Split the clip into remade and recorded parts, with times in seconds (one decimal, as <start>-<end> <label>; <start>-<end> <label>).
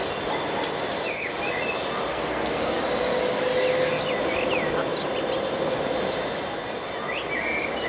0.0-2.1 recorded; 2.1-2.8 remade; 2.8-7.9 recorded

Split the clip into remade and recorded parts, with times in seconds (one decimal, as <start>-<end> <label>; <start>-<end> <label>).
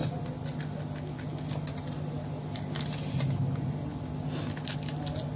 0.0-5.4 recorded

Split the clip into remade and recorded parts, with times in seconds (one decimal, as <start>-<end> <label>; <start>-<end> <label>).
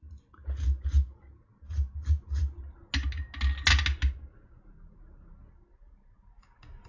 0.0-6.9 recorded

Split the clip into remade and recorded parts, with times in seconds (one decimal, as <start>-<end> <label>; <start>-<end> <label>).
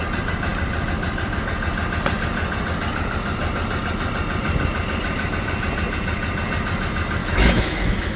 0.0-7.2 recorded; 7.2-8.2 remade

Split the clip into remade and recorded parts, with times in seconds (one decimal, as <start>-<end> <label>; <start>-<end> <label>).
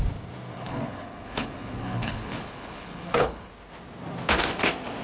0.0-0.5 recorded; 0.5-3.5 remade; 3.5-5.0 recorded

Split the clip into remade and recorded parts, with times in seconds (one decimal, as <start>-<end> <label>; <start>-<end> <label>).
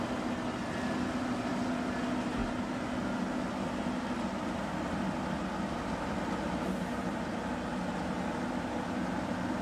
0.0-9.6 recorded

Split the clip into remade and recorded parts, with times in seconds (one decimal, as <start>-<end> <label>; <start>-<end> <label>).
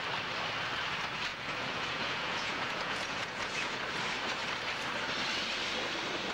0.0-1.3 recorded; 1.3-3.8 remade; 3.8-6.3 recorded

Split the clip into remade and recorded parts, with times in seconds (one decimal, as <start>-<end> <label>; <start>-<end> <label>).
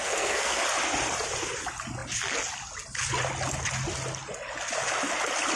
0.0-0.6 remade; 0.6-5.6 recorded